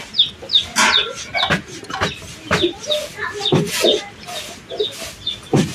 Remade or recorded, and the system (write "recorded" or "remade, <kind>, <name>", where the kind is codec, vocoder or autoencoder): recorded